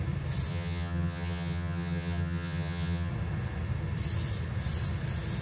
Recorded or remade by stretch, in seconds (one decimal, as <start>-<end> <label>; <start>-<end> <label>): 0.0-0.5 recorded; 0.5-3.1 remade; 3.1-5.4 recorded